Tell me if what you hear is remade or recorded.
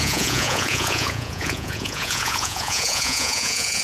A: remade